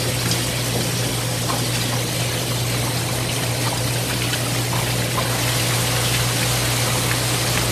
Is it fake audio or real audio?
real